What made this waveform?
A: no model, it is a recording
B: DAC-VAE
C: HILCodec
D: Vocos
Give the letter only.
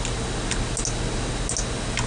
A